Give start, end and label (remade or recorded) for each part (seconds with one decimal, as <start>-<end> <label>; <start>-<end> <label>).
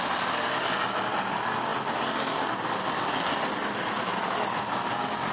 0.0-5.3 recorded